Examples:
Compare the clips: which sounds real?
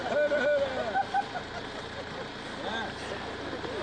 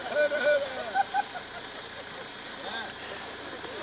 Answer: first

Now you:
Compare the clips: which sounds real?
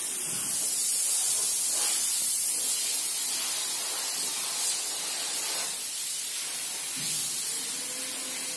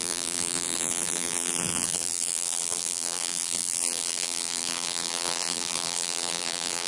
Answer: first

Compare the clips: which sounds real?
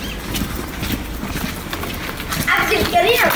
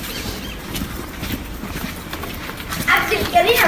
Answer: first